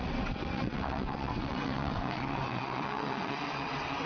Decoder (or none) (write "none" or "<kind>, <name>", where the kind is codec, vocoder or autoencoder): vocoder, WaveNeXt